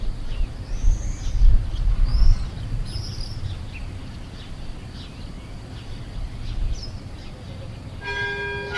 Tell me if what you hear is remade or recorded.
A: recorded